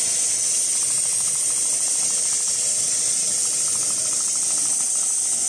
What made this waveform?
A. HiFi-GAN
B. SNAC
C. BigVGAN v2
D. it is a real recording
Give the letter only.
D